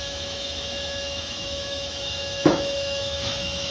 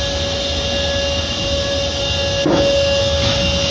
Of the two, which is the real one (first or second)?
second